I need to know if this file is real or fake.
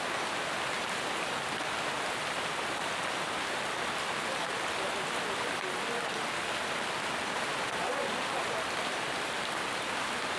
real